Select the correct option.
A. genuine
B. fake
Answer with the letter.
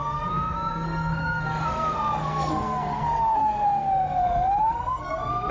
B